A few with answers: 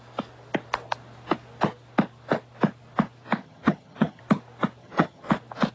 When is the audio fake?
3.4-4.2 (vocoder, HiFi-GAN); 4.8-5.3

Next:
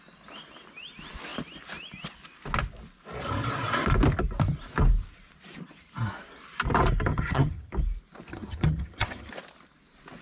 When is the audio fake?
7.1-7.7 (vocoder, HiFi-GAN); 8.3-9.3

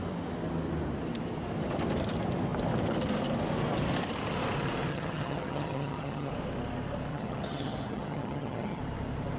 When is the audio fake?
4.9-6.3 (vocoder, HiFi-GAN); 7.1-8.8

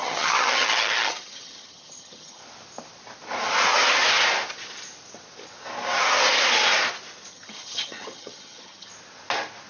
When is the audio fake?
0.0-2.4 (vocoder, HiFi-GAN); 7.3-8.9

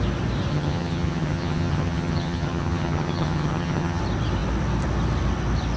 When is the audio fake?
0.5-4.0 (vocoder, HiFi-GAN)

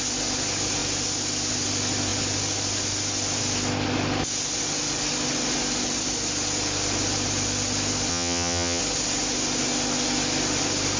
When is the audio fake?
8.1-8.8 (vocoder, HiFi-GAN)